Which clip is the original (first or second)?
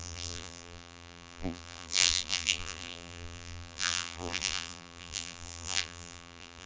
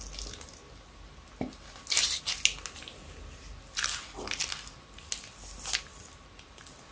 second